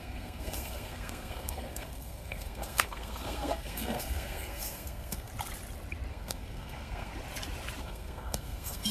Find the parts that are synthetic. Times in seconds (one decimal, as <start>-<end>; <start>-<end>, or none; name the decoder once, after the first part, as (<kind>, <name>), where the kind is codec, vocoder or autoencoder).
0.0-5.3 (codec, SNAC); 6.1-7.1; 7.8-8.9